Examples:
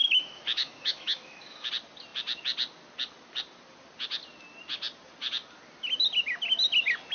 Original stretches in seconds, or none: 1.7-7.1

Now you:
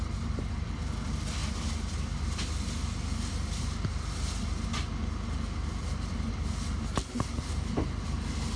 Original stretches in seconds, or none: 0.0-8.6

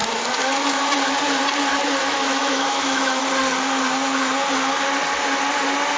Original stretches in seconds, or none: 0.0-2.0; 3.2-6.0